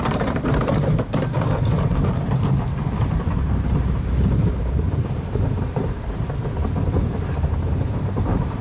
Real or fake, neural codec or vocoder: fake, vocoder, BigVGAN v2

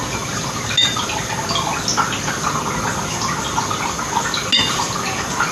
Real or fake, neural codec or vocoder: real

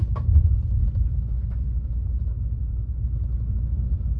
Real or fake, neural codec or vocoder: real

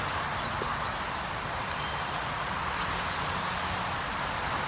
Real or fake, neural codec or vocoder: real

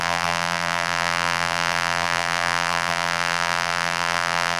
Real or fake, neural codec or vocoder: fake, vocoder, BigVGAN v2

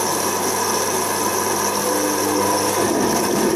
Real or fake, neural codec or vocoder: real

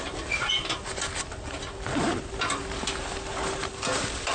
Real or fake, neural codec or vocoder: fake, vocoder, BigVGAN v2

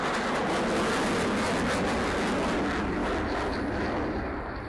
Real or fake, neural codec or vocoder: real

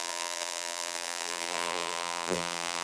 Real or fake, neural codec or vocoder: fake, vocoder, BigVGAN v2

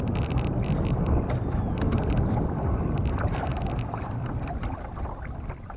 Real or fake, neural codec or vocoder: fake, vocoder, BigVGAN v2